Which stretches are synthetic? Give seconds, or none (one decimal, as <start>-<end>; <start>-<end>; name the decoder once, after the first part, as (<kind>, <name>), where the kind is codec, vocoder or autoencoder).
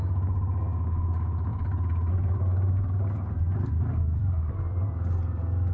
1.5-4.9 (vocoder, BigVGAN v2)